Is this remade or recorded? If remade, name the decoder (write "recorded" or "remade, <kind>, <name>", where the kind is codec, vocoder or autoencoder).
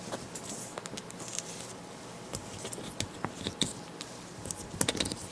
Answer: recorded